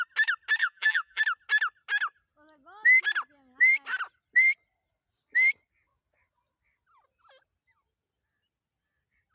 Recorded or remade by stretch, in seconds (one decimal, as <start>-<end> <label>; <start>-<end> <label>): 0.0-0.6 recorded; 0.6-1.2 remade; 1.2-9.3 recorded